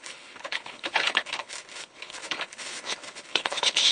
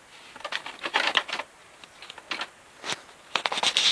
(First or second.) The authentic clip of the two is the second